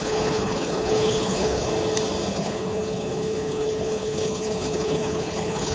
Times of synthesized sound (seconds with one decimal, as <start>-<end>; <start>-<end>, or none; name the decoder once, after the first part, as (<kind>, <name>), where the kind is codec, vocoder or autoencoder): 0.0-1.7 (codec, HILCodec); 2.3-5.7